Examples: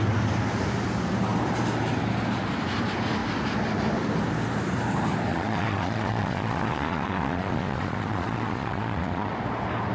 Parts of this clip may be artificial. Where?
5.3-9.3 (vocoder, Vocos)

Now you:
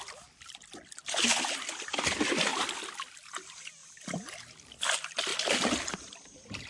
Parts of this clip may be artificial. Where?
2.5-3.1 (vocoder, BigVGAN v2); 3.8-4.8; 5.3-6.7